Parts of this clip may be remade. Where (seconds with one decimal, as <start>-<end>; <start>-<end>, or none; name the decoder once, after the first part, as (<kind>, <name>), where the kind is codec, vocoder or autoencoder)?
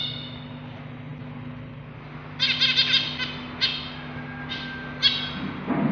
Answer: none